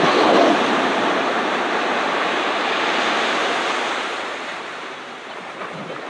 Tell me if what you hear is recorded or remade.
remade